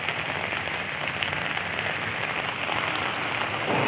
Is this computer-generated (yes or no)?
no